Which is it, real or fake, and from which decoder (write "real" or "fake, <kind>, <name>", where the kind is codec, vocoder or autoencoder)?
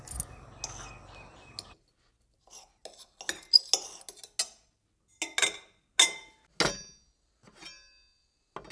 real